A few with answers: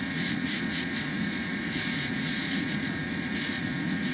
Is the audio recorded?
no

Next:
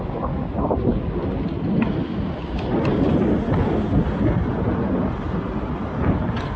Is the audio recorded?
yes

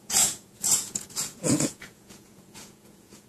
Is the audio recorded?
no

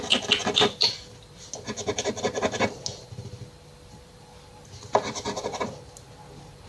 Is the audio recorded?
yes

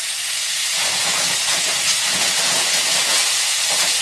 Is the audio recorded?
no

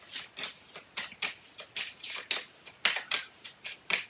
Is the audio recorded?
yes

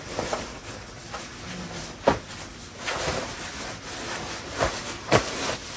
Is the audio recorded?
yes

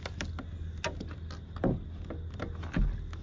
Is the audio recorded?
yes